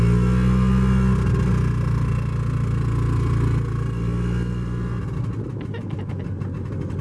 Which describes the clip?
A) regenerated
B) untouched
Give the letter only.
B